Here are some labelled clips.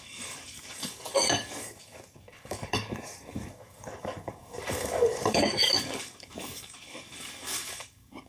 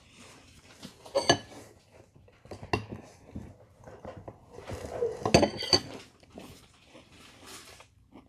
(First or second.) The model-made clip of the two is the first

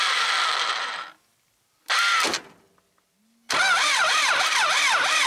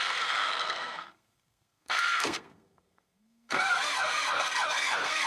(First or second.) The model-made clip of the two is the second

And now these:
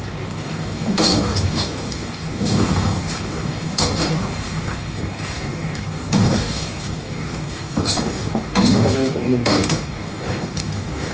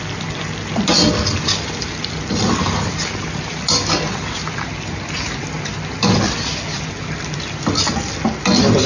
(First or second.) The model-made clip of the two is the first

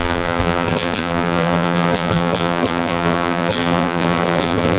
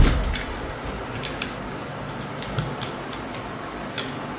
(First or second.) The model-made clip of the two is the first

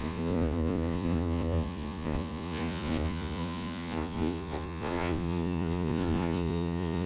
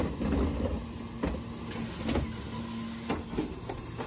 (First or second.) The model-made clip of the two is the first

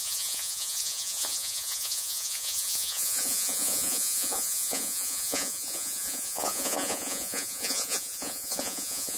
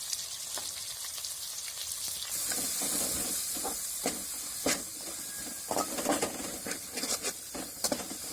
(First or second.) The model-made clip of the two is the first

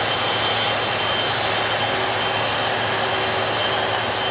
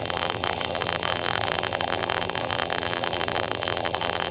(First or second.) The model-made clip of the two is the second